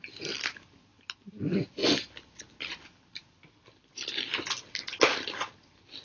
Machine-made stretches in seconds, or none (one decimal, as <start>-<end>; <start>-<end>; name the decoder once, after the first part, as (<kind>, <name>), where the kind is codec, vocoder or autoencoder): none